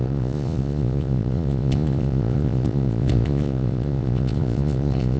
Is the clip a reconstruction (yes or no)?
yes